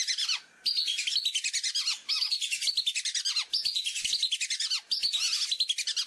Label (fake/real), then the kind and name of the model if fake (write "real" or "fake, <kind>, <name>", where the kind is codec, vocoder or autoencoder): real